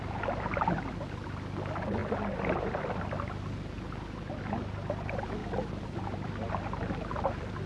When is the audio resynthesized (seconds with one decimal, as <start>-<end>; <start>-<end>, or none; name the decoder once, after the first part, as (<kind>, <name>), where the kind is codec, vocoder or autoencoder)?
2.0-3.4 (vocoder, BigVGAN v2); 5.4-6.5